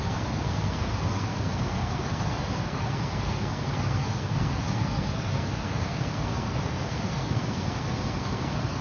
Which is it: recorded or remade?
remade